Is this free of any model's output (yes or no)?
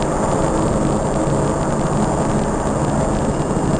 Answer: yes